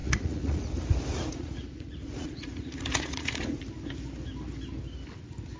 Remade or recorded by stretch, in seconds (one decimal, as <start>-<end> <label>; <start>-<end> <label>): 0.0-0.7 remade; 0.7-1.1 recorded; 1.1-3.6 remade; 3.6-5.6 recorded

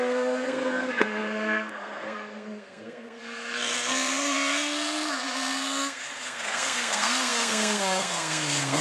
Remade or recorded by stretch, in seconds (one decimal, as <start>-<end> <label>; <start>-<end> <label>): 0.0-8.8 remade

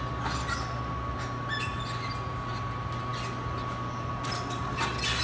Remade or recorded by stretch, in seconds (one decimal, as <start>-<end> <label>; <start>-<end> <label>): 0.0-5.2 recorded

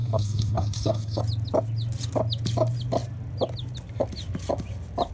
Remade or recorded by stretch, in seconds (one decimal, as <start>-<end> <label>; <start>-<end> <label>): 0.0-1.2 remade; 1.2-5.1 recorded

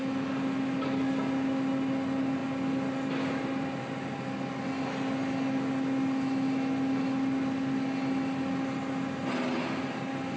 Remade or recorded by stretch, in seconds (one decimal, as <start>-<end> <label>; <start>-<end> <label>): 0.0-10.4 recorded

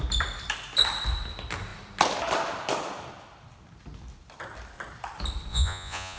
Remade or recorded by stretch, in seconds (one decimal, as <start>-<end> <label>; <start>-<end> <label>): 0.0-5.5 recorded; 5.5-6.2 remade

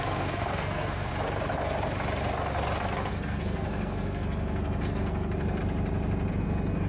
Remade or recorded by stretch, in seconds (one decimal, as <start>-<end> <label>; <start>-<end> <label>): 0.0-1.1 remade; 1.1-3.1 recorded; 3.1-5.6 remade; 5.6-6.3 recorded; 6.3-6.9 remade